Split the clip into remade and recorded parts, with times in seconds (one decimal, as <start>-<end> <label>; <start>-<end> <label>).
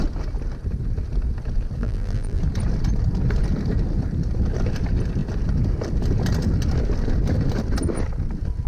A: 0.0-1.8 recorded; 1.8-2.4 remade; 2.4-8.7 recorded